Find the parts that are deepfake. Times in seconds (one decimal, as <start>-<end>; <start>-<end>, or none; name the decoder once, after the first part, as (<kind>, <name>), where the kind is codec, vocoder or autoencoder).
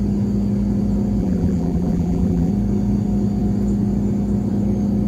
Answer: 1.2-2.5 (vocoder, BigVGAN v2)